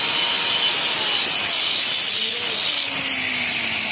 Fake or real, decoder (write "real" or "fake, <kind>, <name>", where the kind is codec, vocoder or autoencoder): real